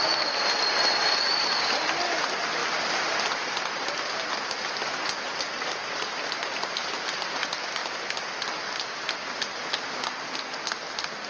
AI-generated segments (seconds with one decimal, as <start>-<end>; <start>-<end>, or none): none